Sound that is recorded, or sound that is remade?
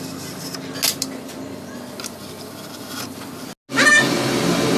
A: recorded